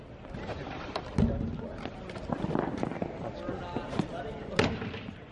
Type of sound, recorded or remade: recorded